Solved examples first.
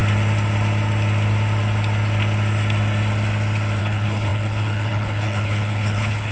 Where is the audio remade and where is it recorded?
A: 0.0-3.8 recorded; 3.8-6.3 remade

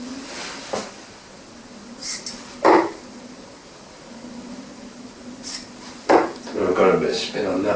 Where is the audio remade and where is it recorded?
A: 0.0-2.0 recorded; 2.0-4.7 remade; 4.7-7.8 recorded

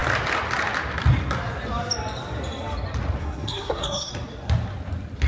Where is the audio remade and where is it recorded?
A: 0.0-3.2 recorded; 3.2-4.1 remade; 4.1-5.3 recorded

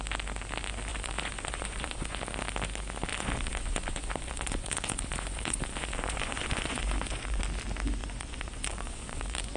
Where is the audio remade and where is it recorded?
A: 0.0-0.9 recorded; 0.9-2.2 remade; 2.2-3.1 recorded; 3.1-7.4 remade; 7.4-8.0 recorded; 8.0-9.6 remade

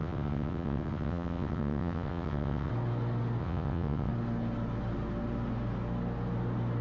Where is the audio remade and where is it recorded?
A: 0.0-2.7 remade; 2.7-3.4 recorded; 3.4-4.1 remade; 4.1-6.8 recorded

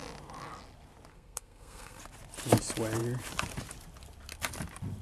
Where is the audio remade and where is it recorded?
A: 0.0-1.1 recorded; 1.1-2.0 remade; 2.0-5.0 recorded

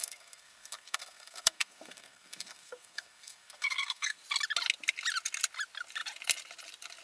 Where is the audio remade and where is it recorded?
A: 0.0-4.2 remade; 4.2-7.0 recorded